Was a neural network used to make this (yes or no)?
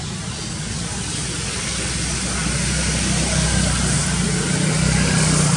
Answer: no